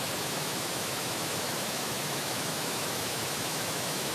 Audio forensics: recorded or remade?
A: remade